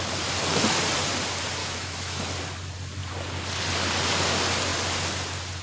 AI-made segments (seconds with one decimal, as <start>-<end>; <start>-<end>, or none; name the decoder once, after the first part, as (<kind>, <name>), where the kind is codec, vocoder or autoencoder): 1.6-2.3 (autoencoder, DAC-VAE)